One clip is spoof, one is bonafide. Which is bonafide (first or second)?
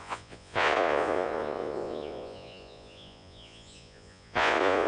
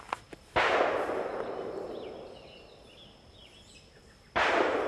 second